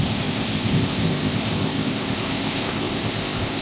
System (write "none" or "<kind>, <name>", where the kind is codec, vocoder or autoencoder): codec, ZipCodec